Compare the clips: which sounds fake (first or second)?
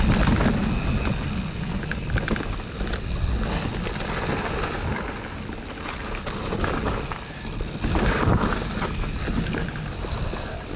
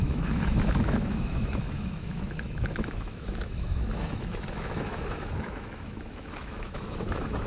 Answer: second